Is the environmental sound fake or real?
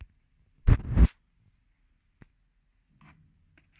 real